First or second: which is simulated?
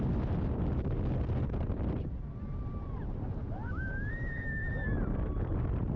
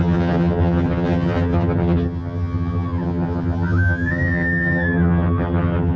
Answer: second